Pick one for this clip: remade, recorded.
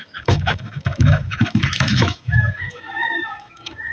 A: remade